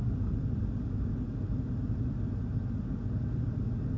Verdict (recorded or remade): recorded